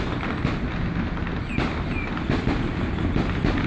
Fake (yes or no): no